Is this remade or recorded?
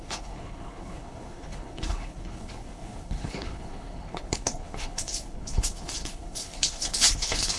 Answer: remade